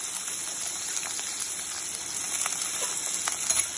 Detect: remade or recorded recorded